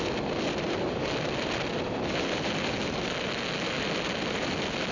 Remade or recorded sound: recorded